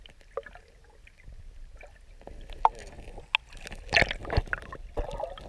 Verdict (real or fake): real